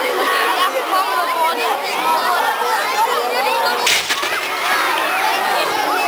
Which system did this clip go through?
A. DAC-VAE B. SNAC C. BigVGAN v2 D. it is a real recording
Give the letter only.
D